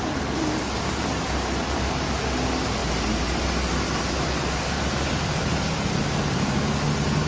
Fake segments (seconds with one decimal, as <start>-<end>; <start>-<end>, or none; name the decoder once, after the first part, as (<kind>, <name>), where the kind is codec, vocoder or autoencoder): none